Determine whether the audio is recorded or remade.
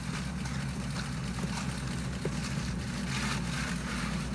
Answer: recorded